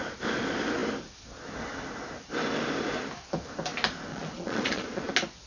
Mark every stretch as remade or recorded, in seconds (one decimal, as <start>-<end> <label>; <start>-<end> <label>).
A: 0.0-4.1 recorded; 4.1-5.1 remade; 5.1-5.5 recorded

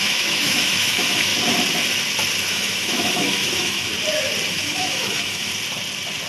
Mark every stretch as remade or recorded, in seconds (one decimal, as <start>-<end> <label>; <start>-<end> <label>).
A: 0.0-1.3 remade; 1.3-2.5 recorded; 2.5-3.9 remade; 3.9-4.5 recorded; 4.5-5.5 remade; 5.5-6.3 recorded

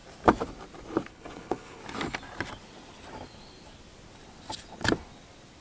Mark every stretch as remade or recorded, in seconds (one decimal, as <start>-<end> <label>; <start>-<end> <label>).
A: 0.0-1.1 recorded; 1.1-1.8 remade; 1.8-5.6 recorded

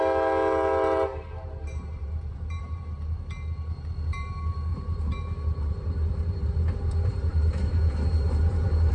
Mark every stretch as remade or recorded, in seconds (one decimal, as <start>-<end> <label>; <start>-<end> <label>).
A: 0.0-1.1 recorded; 1.1-2.6 remade; 2.6-4.7 recorded; 4.7-8.9 remade